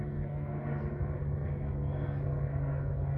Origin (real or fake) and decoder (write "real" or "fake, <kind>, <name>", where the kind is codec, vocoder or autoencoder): fake, codec, SNAC